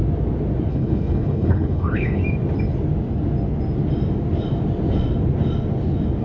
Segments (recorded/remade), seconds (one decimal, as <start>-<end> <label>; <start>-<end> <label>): 0.0-0.7 recorded; 0.7-2.2 remade; 2.2-6.2 recorded